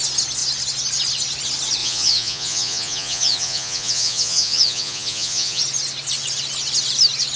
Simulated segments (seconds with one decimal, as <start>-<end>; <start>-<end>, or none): 1.8-5.6